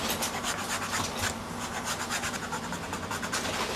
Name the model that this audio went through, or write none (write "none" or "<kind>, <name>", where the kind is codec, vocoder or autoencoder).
none